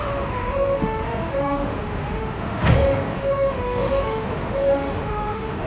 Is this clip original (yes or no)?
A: no